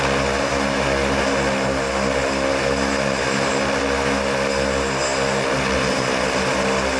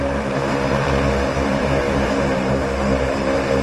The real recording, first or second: first